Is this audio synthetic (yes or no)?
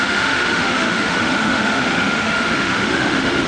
yes